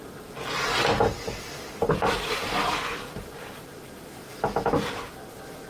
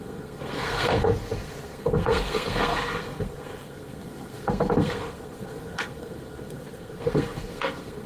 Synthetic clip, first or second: second